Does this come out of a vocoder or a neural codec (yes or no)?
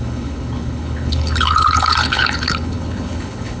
yes